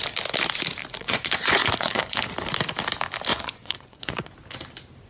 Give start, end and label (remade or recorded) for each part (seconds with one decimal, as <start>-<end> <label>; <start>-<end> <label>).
0.0-0.8 recorded; 0.8-2.3 remade; 2.3-3.3 recorded; 3.3-4.3 remade; 4.3-5.1 recorded